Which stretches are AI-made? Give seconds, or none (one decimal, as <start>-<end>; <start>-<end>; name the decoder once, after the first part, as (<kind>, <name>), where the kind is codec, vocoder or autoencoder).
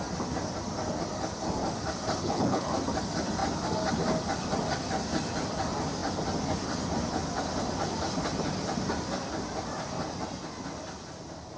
2.2-2.7 (codec, HILCodec)